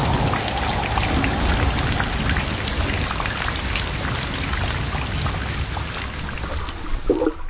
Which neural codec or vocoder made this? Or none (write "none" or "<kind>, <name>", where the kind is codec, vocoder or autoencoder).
none